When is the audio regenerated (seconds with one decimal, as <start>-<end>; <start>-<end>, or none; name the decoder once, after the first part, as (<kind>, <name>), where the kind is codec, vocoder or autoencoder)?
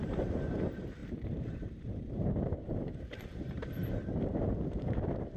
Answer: 0.0-5.4 (vocoder, BigVGAN v2)